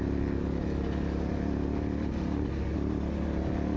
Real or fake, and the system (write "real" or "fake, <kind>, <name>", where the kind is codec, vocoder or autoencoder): real